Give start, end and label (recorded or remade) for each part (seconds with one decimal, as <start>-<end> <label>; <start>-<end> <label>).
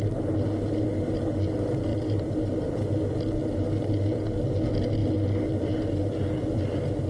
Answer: 0.0-1.9 recorded; 1.9-2.7 remade; 2.7-7.1 recorded